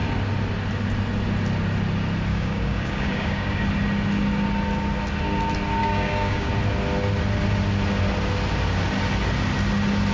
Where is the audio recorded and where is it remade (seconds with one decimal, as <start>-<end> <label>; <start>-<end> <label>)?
0.0-2.3 recorded; 2.3-3.6 remade; 3.6-5.8 recorded; 5.8-6.5 remade; 6.5-10.1 recorded